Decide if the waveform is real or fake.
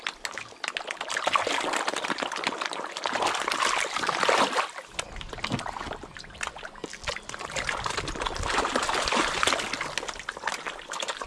real